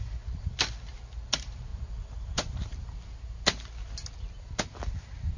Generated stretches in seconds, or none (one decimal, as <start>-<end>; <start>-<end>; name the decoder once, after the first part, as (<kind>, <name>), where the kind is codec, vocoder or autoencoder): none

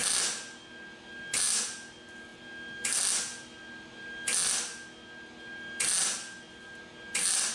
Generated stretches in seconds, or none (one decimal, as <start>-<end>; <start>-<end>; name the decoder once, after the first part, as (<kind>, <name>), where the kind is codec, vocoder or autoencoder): none

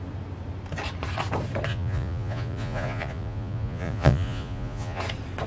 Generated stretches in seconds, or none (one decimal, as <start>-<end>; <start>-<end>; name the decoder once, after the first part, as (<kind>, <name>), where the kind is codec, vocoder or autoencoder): 1.7-5.0 (vocoder, Vocos)

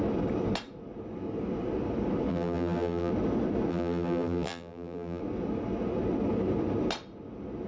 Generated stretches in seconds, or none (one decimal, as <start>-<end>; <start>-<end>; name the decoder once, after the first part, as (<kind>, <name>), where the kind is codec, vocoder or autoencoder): 2.3-3.1 (vocoder, BigVGAN v2); 3.7-5.2

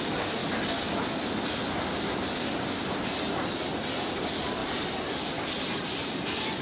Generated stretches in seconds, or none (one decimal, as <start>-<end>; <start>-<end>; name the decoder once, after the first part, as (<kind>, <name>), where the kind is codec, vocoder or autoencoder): none